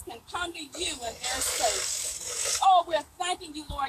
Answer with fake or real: fake